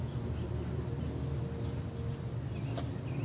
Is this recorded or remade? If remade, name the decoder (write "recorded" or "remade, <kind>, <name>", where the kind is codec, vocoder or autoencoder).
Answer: recorded